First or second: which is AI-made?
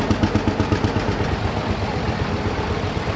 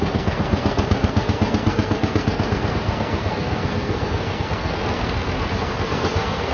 second